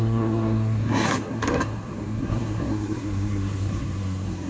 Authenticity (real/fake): fake